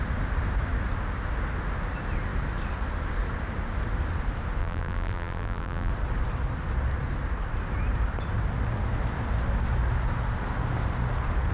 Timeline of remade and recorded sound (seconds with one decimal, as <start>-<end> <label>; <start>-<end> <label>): 0.0-4.6 recorded; 4.6-5.9 remade; 5.9-11.5 recorded

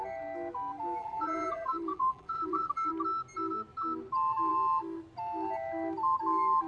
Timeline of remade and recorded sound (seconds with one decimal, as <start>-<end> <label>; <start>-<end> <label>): 0.0-1.0 recorded; 1.0-2.9 remade; 2.9-6.7 recorded